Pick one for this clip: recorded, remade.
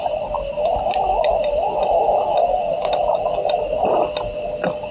recorded